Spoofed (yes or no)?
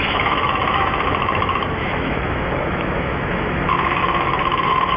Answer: yes